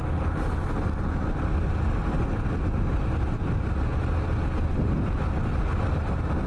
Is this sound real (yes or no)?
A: yes